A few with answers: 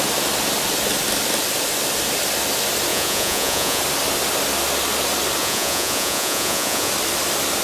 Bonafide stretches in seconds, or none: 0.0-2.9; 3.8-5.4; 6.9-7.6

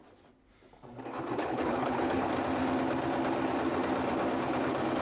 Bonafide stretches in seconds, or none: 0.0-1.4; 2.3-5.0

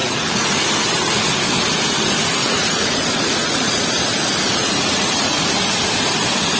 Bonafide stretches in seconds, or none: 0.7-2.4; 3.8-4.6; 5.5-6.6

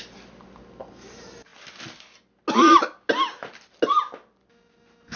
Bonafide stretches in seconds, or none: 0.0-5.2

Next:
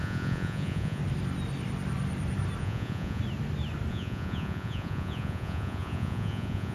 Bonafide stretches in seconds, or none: 1.0-2.6; 3.2-3.9